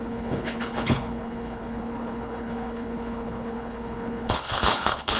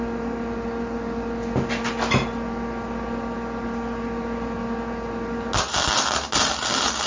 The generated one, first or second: first